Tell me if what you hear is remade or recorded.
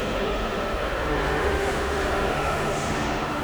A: remade